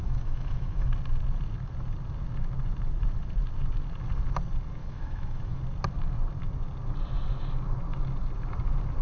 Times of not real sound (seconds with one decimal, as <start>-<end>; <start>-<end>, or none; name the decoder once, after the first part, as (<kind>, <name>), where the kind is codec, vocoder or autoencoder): 0.0-0.9 (autoencoder, DAC-VAE); 4.8-5.6